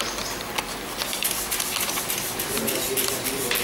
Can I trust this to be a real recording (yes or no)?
yes